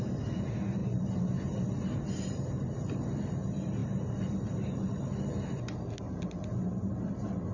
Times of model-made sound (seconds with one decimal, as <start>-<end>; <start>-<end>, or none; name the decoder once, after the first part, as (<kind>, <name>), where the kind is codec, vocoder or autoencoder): none